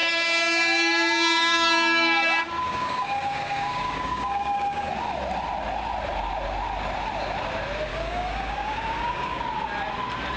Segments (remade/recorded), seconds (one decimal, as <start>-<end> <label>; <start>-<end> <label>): 0.0-4.9 remade; 4.9-7.9 recorded; 7.9-9.4 remade; 9.4-10.4 recorded